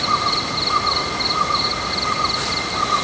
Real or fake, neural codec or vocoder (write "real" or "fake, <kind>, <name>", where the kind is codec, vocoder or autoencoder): real